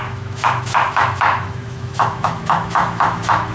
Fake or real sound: fake